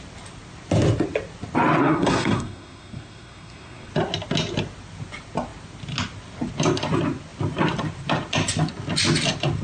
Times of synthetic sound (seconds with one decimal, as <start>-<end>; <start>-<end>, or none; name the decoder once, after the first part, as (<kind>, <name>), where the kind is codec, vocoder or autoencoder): 1.8-3.9 (codec, SNAC)